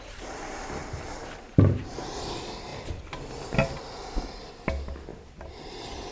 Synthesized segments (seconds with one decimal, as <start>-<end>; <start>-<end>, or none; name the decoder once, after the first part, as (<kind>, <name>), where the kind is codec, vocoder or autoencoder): none